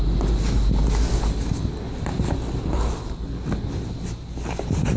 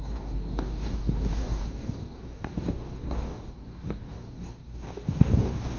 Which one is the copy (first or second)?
second